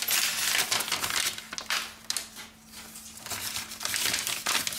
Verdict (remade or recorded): recorded